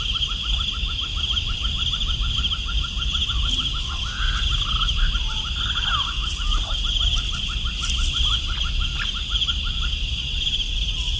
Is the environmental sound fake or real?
real